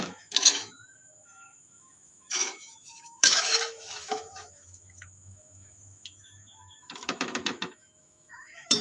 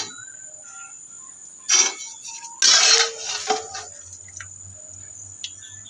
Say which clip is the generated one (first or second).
first